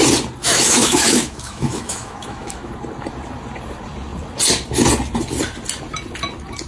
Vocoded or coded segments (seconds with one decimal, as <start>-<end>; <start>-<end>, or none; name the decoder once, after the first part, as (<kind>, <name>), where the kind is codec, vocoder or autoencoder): 0.4-2.7 (autoencoder, DAC-VAE)